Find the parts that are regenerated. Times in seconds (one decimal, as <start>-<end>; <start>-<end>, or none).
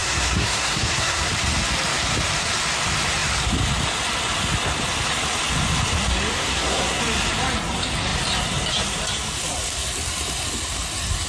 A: 0.0-1.3; 6.3-7.0